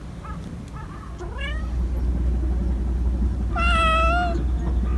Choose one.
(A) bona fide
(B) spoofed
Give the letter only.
A